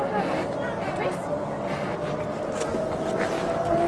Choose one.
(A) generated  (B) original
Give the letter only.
B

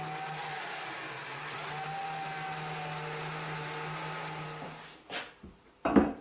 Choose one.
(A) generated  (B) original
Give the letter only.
B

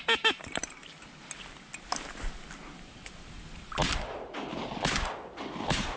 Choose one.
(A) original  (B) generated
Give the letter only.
A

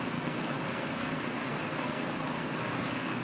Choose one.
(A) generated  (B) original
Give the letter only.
A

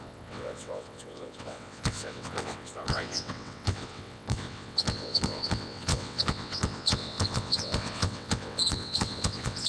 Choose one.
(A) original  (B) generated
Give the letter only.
B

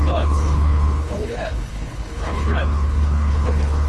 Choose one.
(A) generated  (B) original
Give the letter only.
A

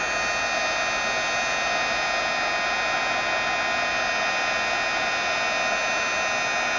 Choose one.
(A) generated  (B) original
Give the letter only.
B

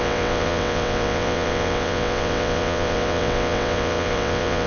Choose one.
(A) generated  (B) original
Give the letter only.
A